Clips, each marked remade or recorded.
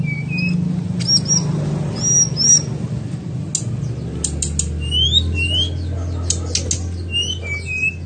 recorded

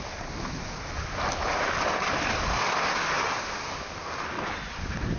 recorded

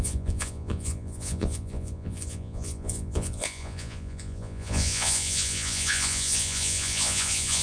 remade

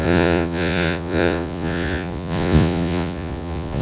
remade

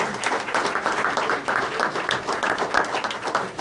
recorded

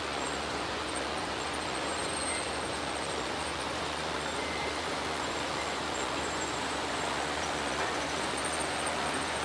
remade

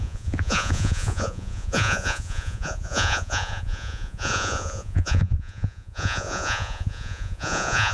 remade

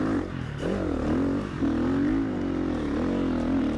recorded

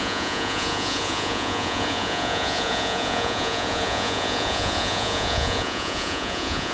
remade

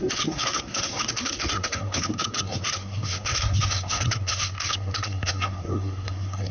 remade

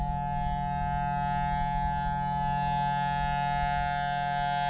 recorded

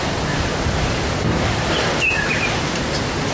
recorded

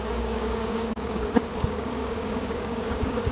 remade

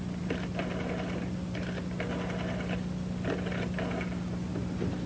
recorded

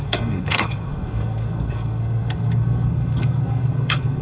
remade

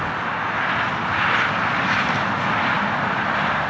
recorded